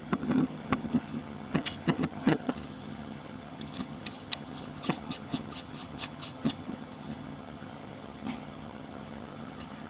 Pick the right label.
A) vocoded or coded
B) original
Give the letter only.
A